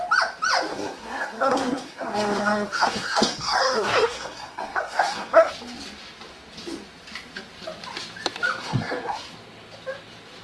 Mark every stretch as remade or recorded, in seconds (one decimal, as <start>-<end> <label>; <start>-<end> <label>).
0.0-0.7 recorded; 0.7-5.5 remade; 5.5-8.6 recorded; 8.6-9.3 remade; 9.3-10.4 recorded